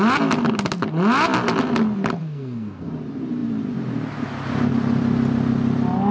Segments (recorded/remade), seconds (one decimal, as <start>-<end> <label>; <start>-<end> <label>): 0.0-2.2 recorded; 2.2-2.9 remade; 2.9-6.1 recorded